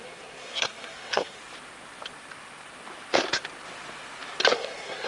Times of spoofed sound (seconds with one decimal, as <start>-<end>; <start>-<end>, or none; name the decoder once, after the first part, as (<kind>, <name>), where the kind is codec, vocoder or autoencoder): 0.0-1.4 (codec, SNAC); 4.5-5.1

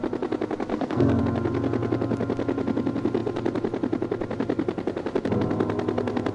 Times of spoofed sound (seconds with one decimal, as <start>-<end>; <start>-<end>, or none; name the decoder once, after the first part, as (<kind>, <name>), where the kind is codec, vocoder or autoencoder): 0.7-1.2 (codec, SNAC)

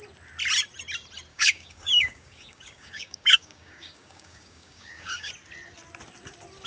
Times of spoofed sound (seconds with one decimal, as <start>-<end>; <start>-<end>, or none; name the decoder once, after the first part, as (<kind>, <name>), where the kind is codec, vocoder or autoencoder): 1.3-5.3 (codec, DAC)

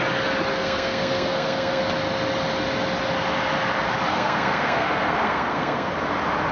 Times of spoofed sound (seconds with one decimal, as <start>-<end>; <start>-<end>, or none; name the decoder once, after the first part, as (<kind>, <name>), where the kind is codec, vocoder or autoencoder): 0.5-1.8 (codec, SNAC); 4.1-5.9